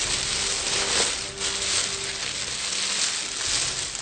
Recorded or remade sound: recorded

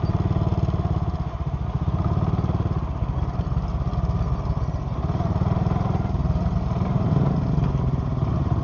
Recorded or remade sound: recorded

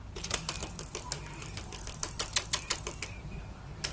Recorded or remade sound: recorded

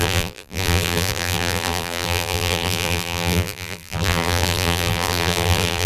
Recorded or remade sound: remade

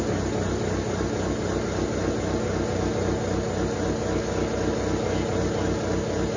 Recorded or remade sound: recorded